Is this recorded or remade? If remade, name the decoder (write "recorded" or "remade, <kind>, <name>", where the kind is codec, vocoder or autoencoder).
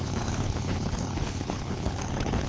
remade, codec, HILCodec